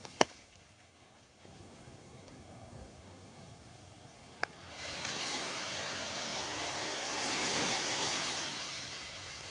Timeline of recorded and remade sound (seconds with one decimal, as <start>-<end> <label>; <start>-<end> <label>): 0.0-9.5 remade